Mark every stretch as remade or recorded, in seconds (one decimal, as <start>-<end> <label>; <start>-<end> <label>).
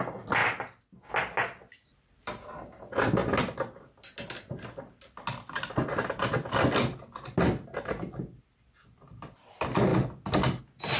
0.0-11.0 recorded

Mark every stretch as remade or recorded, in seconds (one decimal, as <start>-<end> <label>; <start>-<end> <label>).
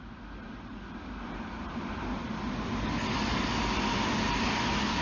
0.0-5.0 recorded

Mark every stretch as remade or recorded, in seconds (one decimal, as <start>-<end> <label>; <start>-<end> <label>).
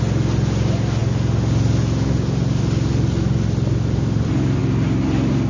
0.0-5.5 recorded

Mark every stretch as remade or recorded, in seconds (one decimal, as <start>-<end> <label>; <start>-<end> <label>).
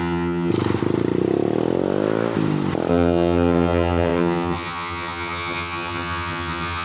0.0-0.5 remade; 0.5-2.9 recorded; 2.9-6.8 remade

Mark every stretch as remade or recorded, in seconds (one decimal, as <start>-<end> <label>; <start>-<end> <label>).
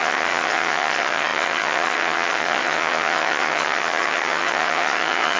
0.0-5.4 remade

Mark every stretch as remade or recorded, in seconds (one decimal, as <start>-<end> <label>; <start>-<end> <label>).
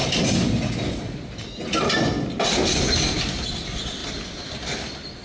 0.0-5.2 recorded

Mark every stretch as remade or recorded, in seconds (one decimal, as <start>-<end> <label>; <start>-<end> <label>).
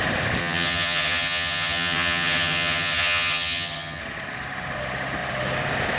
0.0-0.4 recorded; 0.4-4.0 remade; 4.0-6.0 recorded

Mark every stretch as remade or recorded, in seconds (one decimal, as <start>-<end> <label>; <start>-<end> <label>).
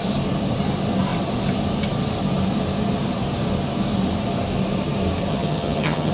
0.0-5.3 recorded; 5.3-6.1 remade